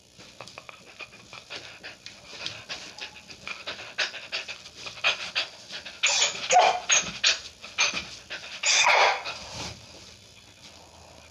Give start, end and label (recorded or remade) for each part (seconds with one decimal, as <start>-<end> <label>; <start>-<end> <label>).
0.0-2.3 recorded; 2.3-5.3 remade; 5.3-7.6 recorded; 7.6-10.9 remade; 10.9-11.3 recorded